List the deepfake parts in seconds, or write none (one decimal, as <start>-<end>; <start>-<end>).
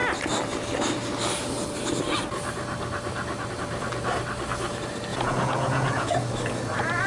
5.1-6.1